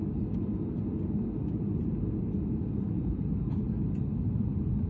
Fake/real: real